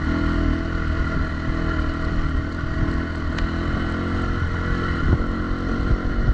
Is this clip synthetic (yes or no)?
no